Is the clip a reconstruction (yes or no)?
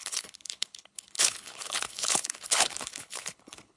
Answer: yes